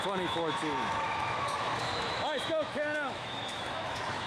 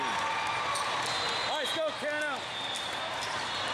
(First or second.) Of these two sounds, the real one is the second